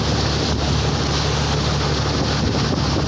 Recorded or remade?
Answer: recorded